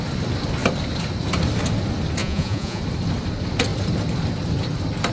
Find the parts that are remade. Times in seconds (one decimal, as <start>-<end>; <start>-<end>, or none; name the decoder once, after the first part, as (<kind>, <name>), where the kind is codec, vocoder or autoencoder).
2.2-2.8 (vocoder, Vocos)